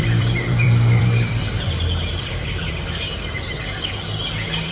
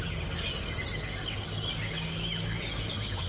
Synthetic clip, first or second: first